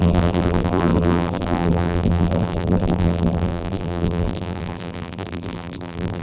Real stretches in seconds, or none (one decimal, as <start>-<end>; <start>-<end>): none